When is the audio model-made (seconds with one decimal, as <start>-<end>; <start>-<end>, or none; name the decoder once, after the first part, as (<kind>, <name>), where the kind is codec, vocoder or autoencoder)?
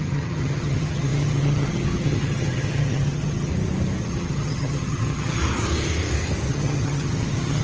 0.0-3.5 (vocoder, HiFi-GAN); 4.0-5.4; 6.5-7.6